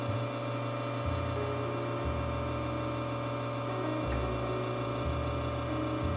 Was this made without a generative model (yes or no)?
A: yes